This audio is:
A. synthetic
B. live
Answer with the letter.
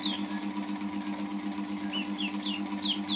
B